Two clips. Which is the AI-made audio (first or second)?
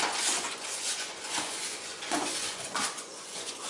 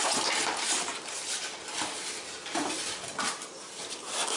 first